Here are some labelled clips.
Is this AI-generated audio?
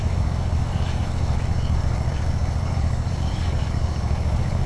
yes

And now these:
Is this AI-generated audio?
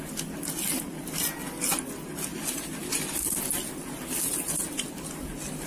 no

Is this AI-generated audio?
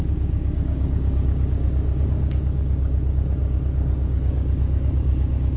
yes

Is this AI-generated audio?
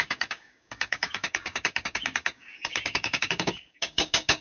yes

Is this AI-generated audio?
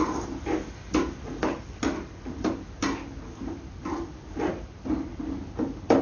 no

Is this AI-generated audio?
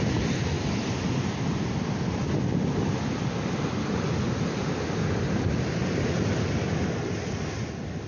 no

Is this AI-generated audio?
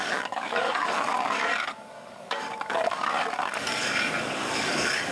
yes